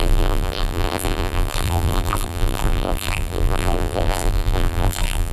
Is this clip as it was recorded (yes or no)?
no